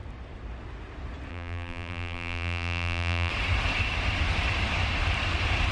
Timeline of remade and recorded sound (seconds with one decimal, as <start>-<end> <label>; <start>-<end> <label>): 0.0-1.3 recorded; 1.3-3.3 remade; 3.3-5.7 recorded